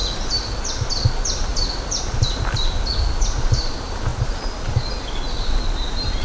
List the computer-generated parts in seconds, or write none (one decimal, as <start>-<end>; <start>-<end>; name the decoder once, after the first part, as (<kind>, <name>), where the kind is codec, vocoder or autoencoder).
1.5-2.0 (vocoder, BigVGAN v2); 4.1-5.0